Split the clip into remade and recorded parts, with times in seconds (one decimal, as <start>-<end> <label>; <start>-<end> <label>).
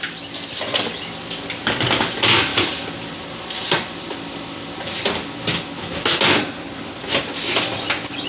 0.0-8.3 recorded